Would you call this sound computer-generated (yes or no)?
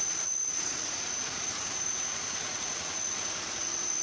yes